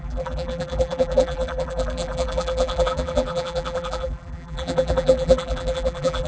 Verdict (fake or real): fake